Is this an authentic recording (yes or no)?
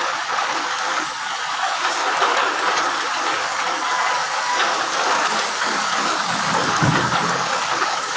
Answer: no